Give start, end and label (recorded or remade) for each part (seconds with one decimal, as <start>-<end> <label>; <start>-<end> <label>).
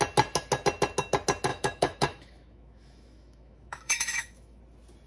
0.0-1.5 recorded; 1.5-4.6 remade; 4.6-5.1 recorded